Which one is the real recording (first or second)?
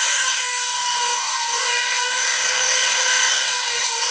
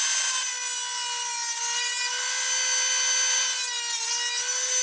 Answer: second